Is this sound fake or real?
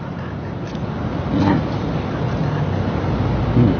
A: real